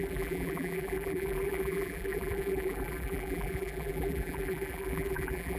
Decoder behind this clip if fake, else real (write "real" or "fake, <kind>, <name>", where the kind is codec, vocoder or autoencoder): fake, vocoder, BigVGAN v2